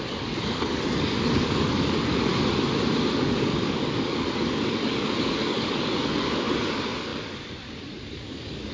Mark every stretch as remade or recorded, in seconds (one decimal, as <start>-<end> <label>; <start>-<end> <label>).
0.0-2.3 remade; 2.3-3.1 recorded; 3.1-8.7 remade